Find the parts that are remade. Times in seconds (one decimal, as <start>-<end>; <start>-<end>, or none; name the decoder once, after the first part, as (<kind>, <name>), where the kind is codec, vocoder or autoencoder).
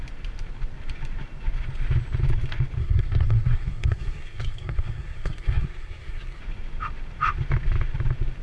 2.8-6.4 (codec, SNAC)